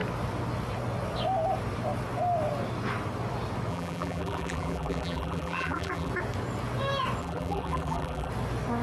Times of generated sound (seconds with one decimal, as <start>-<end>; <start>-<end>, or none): 3.7-6.1; 7.2-8.3